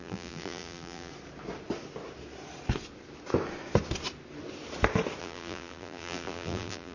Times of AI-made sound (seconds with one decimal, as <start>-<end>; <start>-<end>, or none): 0.0-1.1; 5.2-6.9